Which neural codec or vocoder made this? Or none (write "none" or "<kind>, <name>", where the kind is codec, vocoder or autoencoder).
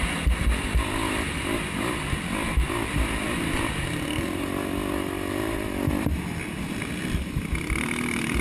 none